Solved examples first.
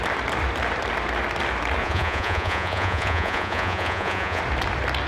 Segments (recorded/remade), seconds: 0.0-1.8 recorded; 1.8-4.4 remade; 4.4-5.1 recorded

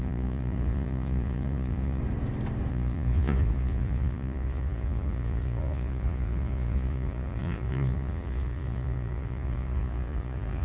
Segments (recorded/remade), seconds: 0.0-2.0 remade; 2.0-2.7 recorded; 2.7-10.6 remade

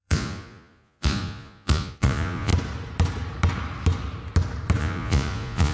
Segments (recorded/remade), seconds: 0.0-2.5 remade; 2.5-4.8 recorded; 4.8-5.7 remade

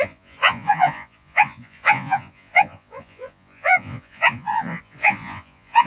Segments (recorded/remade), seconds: 0.0-5.9 remade

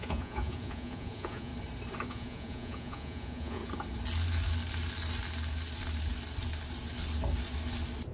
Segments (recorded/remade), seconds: 0.0-1.5 remade; 1.5-2.1 recorded; 2.1-3.6 remade; 3.6-8.1 recorded

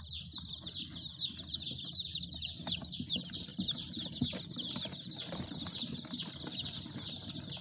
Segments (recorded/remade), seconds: 0.0-7.6 recorded

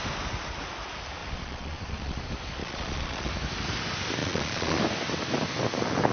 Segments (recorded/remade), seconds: 0.0-1.2 recorded; 1.2-2.2 remade; 2.2-2.6 recorded; 2.6-3.3 remade; 3.3-4.2 recorded; 4.2-4.8 remade; 4.8-6.1 recorded

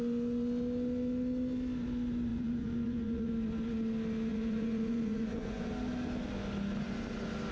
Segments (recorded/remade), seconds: 0.0-2.3 recorded; 2.3-3.3 remade; 3.3-4.3 recorded; 4.3-5.7 remade; 5.7-7.5 recorded